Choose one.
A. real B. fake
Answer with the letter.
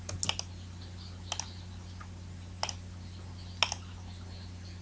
A